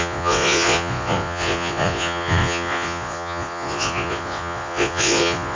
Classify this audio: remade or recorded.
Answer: remade